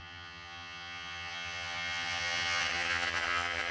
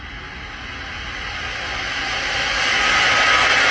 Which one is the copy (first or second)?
first